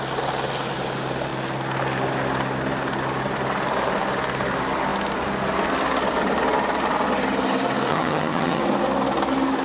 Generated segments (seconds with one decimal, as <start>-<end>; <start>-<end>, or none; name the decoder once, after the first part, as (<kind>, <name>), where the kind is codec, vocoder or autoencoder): 7.9-8.6 (vocoder, HiFi-GAN)

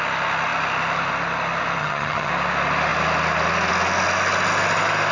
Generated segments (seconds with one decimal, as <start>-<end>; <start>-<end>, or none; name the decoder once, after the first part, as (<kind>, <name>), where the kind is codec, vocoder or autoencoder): 1.8-2.3 (vocoder, HiFi-GAN)

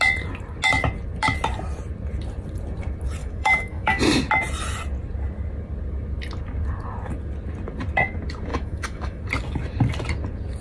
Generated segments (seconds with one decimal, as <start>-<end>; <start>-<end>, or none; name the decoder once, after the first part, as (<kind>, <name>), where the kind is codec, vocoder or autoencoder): 3.2-4.0 (autoencoder, DAC-VAE); 8.5-9.2

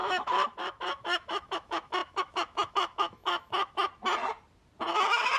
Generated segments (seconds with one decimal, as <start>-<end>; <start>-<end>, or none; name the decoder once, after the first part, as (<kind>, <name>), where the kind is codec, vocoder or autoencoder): 0.0-3.9 (autoencoder, DAC-VAE); 4.9-5.4

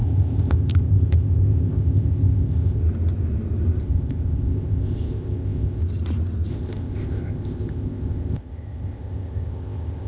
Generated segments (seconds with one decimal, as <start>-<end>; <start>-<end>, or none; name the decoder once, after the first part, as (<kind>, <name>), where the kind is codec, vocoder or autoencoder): 0.0-2.8 (codec, ZipCodec); 3.8-5.8; 6.5-10.1

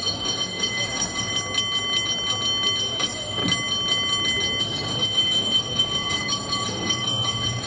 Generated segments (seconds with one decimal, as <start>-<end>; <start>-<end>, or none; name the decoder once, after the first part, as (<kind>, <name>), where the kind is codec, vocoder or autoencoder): 0.0-1.3 (codec, DAC); 2.8-3.4; 4.6-7.7